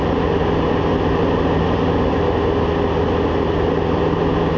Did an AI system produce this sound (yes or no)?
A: no